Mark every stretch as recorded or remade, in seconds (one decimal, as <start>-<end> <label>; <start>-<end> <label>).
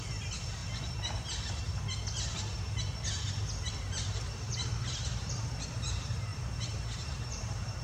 0.0-0.6 remade; 0.6-3.6 recorded; 3.6-7.8 remade